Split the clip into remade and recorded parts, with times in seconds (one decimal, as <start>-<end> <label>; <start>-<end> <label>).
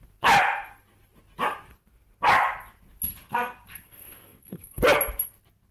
0.0-3.3 recorded; 3.3-4.8 remade; 4.8-5.7 recorded